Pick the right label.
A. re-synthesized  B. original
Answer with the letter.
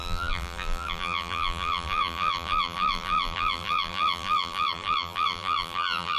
A